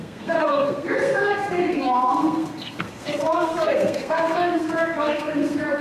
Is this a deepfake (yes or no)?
yes